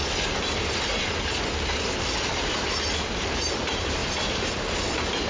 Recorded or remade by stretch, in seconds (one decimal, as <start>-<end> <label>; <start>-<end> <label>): 0.0-3.2 recorded; 3.2-5.3 remade